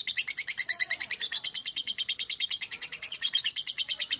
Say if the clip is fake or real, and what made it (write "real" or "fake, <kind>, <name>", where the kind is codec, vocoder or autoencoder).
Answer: fake, vocoder, Vocos